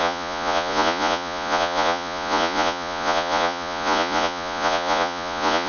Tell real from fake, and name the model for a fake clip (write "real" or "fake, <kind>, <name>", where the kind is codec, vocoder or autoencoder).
fake, vocoder, Vocos